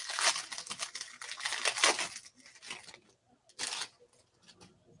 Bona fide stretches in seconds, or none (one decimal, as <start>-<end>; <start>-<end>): 0.0-5.0